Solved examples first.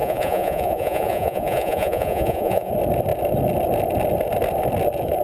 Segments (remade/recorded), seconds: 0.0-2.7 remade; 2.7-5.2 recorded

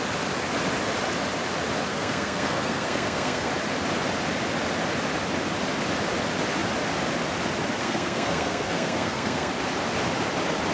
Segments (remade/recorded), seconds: 0.0-1.9 recorded; 1.9-3.5 remade; 3.5-7.8 recorded; 7.8-9.5 remade; 9.5-10.7 recorded